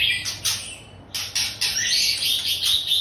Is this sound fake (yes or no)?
no